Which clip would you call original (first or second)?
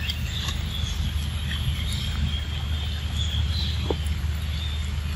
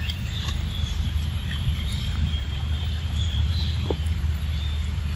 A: first